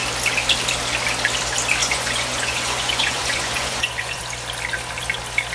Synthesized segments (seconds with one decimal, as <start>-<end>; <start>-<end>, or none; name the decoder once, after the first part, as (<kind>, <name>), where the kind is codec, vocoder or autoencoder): 1.8-4.2 (vocoder, Vocos)